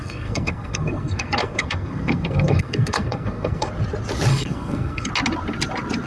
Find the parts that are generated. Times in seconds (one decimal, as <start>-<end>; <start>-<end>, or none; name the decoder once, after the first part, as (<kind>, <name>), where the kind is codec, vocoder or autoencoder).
0.0-3.7 (codec, SNAC); 4.3-5.1